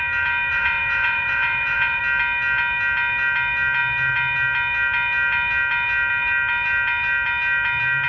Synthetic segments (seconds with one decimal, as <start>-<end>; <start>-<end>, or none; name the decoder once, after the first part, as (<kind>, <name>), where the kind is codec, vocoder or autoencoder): 0.5-2.0 (vocoder, Vocos)

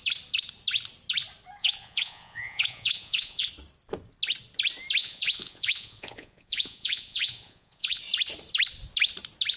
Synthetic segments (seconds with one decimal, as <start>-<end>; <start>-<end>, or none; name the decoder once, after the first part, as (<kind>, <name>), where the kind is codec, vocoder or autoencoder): 1.6-3.5 (vocoder, Vocos); 5.0-8.0

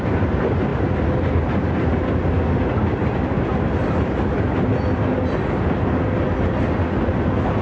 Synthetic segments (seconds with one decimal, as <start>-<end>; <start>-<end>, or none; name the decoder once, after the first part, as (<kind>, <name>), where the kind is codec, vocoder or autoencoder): none

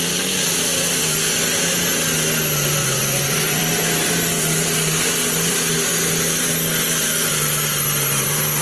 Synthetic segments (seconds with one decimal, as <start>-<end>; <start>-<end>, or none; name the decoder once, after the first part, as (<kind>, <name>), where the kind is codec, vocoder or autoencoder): 2.8-3.6 (vocoder, Vocos)

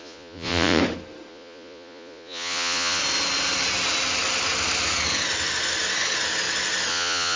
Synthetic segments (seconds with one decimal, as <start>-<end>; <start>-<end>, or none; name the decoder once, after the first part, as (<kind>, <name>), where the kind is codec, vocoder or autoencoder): 0.0-0.8 (vocoder, Vocos); 1.3-3.0; 6.9-7.4